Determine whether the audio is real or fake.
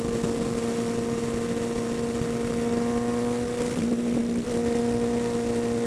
real